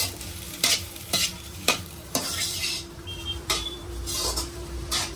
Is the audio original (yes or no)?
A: no